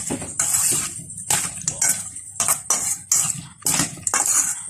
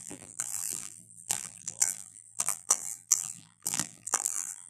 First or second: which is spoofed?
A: second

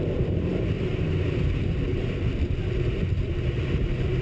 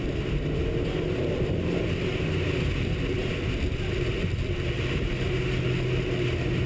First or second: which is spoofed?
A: first